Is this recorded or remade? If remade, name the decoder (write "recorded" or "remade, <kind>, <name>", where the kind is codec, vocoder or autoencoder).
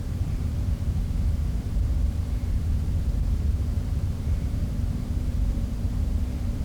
remade, vocoder, BigVGAN v2